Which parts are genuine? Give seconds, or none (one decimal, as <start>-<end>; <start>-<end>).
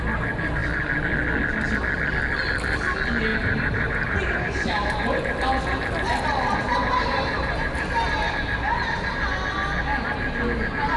0.0-3.3; 8.3-11.0